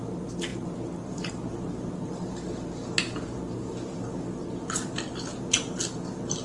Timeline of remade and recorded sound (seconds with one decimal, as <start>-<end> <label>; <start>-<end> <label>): 0.0-6.4 recorded